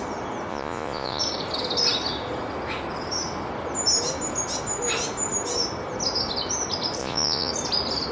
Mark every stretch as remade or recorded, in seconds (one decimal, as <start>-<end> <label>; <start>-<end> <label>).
0.0-0.5 recorded; 0.5-1.2 remade; 1.2-7.0 recorded; 7.0-7.5 remade; 7.5-8.1 recorded